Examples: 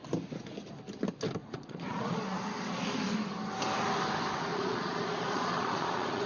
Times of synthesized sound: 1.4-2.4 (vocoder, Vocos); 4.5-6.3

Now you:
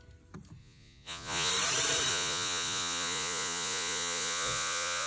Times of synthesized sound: 0.6-1.5 (vocoder, Vocos); 2.1-5.1

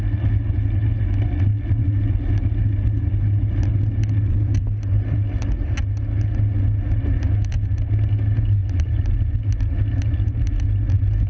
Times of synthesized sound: none

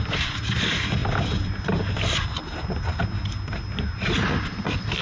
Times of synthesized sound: none

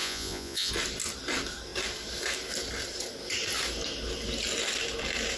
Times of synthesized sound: 0.0-0.7 (vocoder, Vocos)

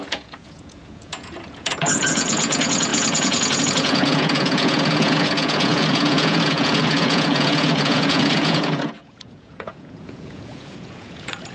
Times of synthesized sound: 0.0-11.5 (vocoder, Vocos)